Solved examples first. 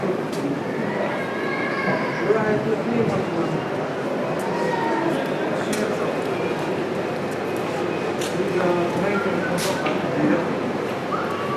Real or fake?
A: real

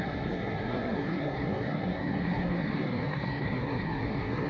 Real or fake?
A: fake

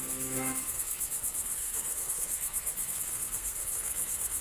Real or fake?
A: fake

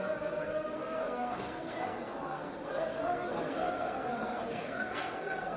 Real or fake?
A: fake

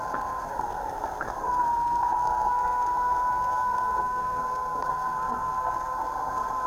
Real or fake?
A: fake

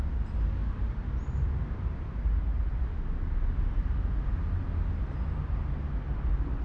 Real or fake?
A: real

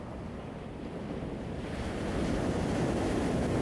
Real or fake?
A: real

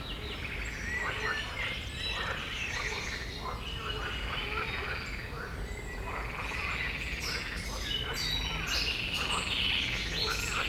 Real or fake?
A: real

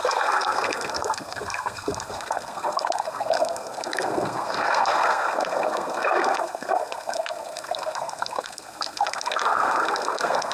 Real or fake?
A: fake